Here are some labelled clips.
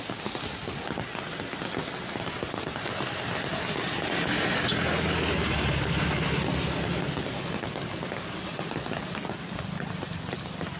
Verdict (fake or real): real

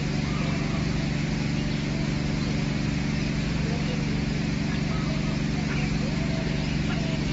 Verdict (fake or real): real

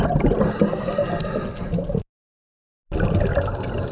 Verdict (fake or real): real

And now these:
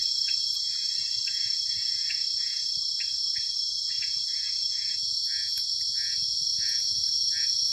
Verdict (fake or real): fake